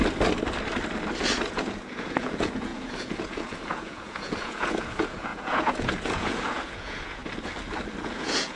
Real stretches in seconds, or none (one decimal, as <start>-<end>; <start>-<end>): 0.0-1.5; 7.2-8.0